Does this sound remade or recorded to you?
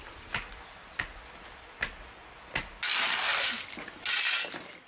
recorded